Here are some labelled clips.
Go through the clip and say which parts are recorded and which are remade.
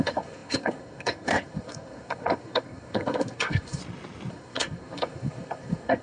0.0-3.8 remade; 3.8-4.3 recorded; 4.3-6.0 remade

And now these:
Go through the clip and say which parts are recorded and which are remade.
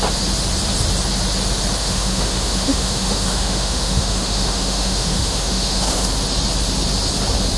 0.0-1.8 recorded; 1.8-6.1 remade; 6.1-7.6 recorded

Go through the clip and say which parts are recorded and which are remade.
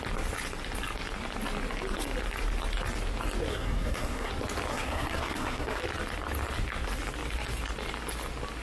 0.0-3.5 recorded; 3.5-4.3 remade; 4.3-4.7 recorded; 4.7-5.8 remade; 5.8-8.6 recorded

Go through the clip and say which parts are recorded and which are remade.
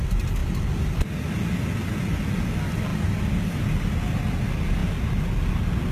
0.0-5.9 recorded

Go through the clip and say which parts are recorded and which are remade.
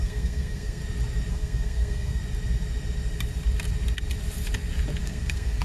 0.0-0.8 remade; 0.8-1.3 recorded; 1.3-2.2 remade; 2.2-5.0 recorded; 5.0-5.6 remade